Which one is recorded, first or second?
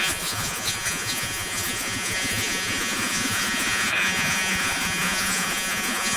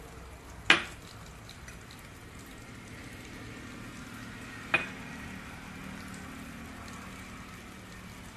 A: second